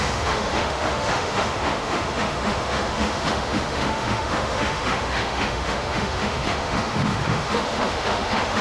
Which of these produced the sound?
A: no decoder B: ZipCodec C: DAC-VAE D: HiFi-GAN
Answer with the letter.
C